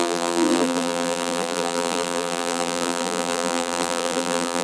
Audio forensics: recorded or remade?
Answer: remade